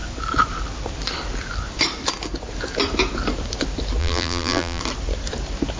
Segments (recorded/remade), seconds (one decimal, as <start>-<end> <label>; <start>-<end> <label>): 0.0-4.0 recorded; 4.0-4.8 remade; 4.8-5.8 recorded